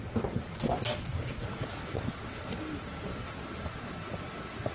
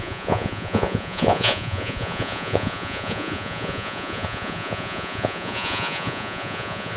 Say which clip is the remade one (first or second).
second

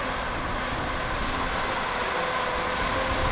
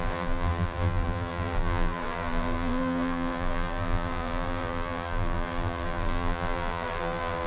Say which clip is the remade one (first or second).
second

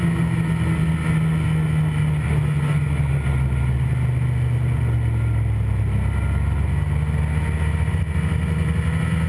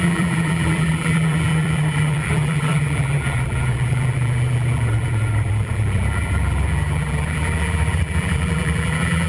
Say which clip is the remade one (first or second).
second